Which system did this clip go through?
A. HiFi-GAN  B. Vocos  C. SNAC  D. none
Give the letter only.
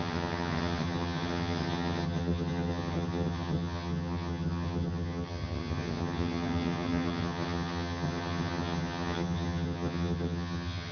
A